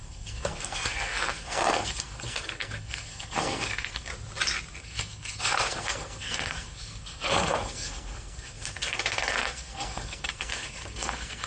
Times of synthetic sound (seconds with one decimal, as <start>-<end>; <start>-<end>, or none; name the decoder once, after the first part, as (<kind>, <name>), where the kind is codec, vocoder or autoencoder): 0.0-4.1 (codec, SNAC); 4.8-11.5